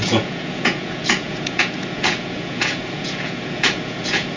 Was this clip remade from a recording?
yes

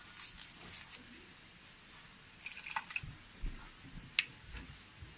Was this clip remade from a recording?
no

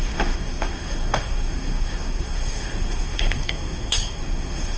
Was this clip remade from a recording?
yes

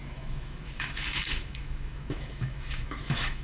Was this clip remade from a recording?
yes